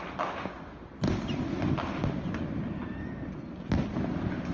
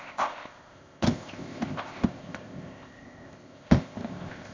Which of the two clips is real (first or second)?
first